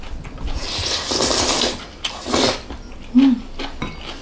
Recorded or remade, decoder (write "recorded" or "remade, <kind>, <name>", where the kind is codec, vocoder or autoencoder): recorded